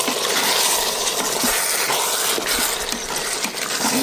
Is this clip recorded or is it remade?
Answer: recorded